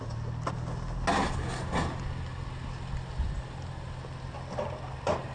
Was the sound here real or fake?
real